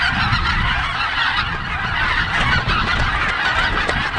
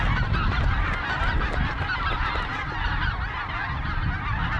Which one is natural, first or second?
second